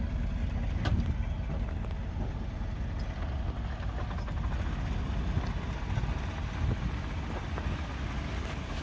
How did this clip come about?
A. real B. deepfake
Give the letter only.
A